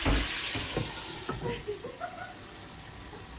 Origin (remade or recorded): recorded